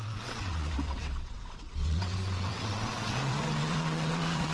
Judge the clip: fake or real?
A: fake